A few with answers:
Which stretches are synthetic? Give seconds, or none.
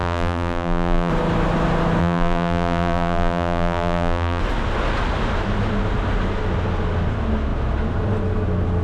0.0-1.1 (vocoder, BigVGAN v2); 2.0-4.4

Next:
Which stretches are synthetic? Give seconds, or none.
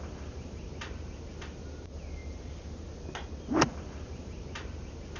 none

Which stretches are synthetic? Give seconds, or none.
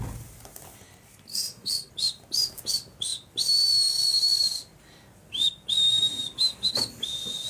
1.3-1.9 (codec, SNAC)